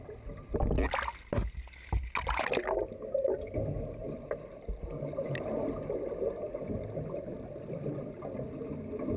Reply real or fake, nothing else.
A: real